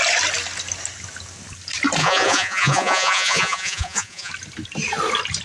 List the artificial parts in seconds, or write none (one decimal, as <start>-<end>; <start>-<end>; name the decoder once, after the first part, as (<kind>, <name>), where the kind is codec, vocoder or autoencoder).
2.0-4.3 (vocoder, Vocos)